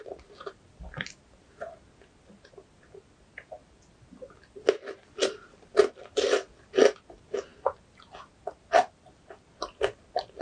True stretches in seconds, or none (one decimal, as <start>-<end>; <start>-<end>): 0.0-10.4